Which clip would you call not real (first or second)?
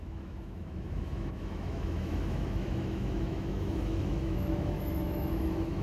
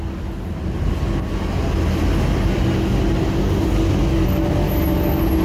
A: first